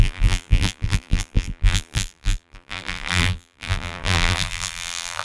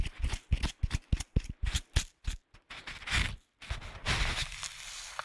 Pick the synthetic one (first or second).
first